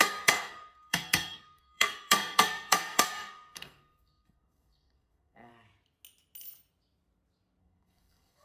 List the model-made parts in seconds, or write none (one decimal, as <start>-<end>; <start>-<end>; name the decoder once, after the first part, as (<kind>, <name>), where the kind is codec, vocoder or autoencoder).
0.0-5.5 (codec, SNAC); 7.6-8.4